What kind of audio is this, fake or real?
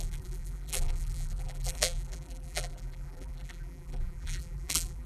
fake